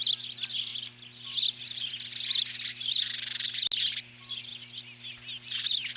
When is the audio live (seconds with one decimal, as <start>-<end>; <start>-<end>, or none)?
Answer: 0.0-6.0